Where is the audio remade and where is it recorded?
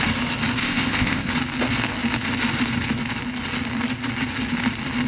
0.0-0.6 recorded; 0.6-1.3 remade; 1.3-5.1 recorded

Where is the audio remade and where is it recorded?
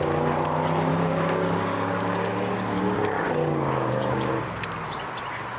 0.0-0.9 recorded; 0.9-4.3 remade; 4.3-5.6 recorded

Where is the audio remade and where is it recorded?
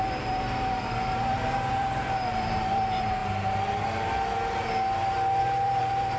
0.0-3.2 remade; 3.2-5.4 recorded; 5.4-6.2 remade